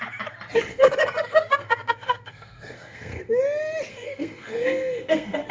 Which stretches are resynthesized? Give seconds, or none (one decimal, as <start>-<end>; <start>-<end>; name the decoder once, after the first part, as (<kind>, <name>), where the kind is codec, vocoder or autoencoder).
0.7-3.4 (codec, SNAC); 3.9-5.5